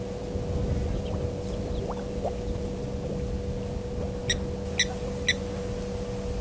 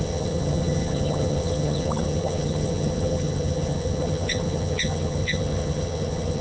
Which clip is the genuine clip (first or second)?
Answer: first